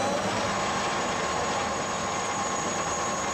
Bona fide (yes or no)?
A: yes